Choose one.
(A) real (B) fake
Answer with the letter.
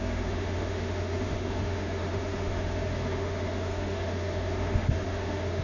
B